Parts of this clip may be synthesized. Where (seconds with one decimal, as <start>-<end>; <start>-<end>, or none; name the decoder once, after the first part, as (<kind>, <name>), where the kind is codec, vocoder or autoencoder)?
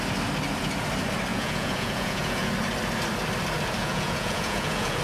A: 1.3-2.5 (vocoder, Vocos); 3.8-5.0